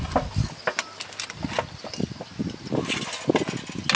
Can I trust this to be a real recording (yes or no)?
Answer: yes